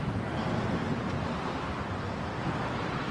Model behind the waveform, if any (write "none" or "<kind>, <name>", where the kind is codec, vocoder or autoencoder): vocoder, BigVGAN v2